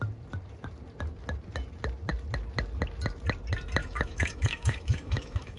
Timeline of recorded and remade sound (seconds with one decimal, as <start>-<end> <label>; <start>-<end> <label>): 0.0-3.8 recorded; 3.8-5.6 remade